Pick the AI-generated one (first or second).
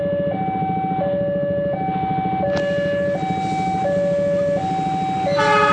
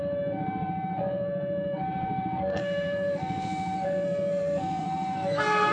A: second